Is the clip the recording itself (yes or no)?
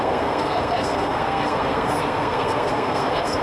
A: no